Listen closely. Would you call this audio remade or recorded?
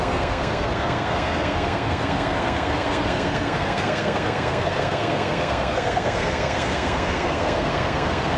remade